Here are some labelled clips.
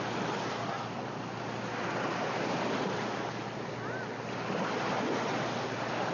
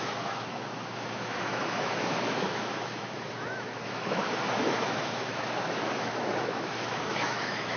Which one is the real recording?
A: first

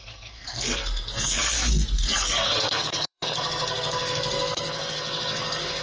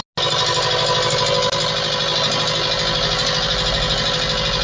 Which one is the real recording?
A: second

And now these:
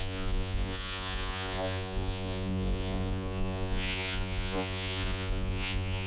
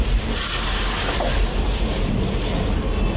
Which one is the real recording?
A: second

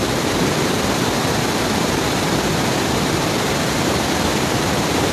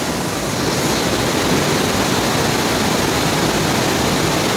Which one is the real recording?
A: second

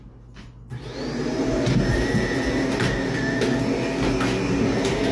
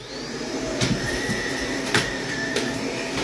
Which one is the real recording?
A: first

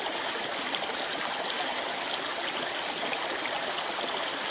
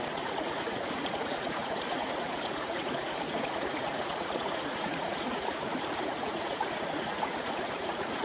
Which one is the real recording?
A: first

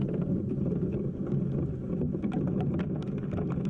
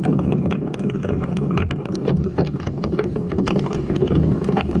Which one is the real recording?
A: first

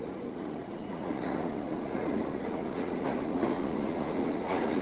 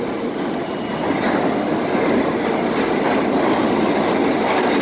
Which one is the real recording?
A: second